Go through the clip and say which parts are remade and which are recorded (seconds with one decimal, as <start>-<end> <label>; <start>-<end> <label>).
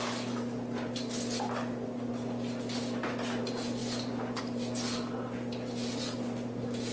0.0-6.9 recorded